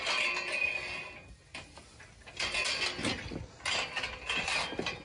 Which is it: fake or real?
real